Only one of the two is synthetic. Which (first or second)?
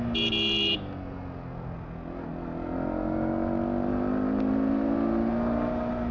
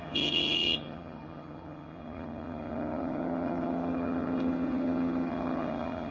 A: second